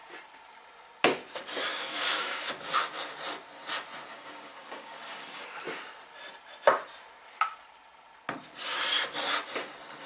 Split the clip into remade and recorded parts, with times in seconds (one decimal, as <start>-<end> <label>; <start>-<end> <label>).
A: 0.0-1.7 recorded; 1.7-2.5 remade; 2.5-4.1 recorded; 4.1-5.6 remade; 5.6-10.1 recorded